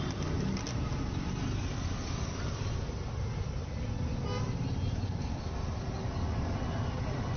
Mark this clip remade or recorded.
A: recorded